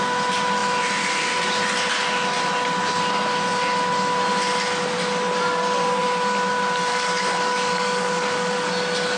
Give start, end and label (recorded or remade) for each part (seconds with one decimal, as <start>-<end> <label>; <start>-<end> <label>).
0.0-6.9 recorded; 6.9-8.7 remade; 8.7-9.2 recorded